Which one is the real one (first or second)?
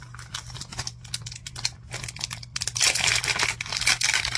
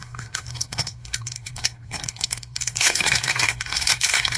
first